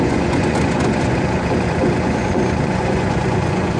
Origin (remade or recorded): remade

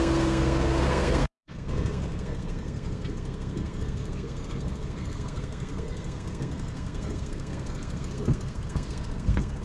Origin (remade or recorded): remade